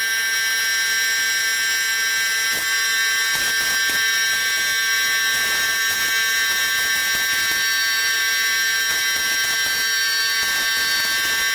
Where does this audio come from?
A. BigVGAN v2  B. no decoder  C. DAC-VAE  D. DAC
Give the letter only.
B